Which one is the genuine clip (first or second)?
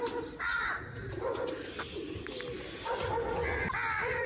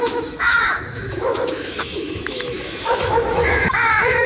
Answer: first